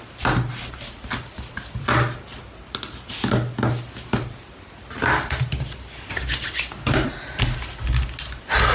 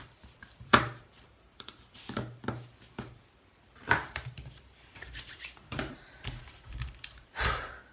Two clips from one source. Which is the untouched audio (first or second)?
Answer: first